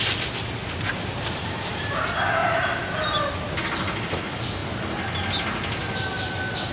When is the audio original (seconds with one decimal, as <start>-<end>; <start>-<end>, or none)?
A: 0.0-0.6; 2.0-2.4; 3.3-6.7